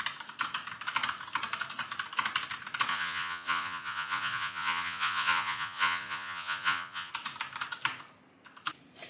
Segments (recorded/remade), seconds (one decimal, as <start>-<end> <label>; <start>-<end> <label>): 0.0-2.9 recorded; 2.9-7.1 remade; 7.1-9.1 recorded